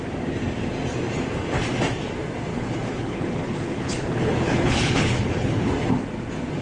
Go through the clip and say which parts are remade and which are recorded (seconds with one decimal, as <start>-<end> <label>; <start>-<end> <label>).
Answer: 0.0-2.5 recorded; 2.5-5.7 remade; 5.7-6.6 recorded